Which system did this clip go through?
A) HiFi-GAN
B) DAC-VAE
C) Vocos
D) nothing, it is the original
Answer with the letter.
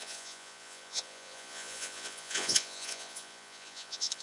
C